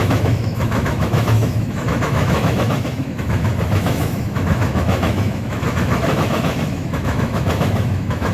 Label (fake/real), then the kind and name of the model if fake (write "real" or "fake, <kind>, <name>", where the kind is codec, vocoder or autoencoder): fake, autoencoder, DAC-VAE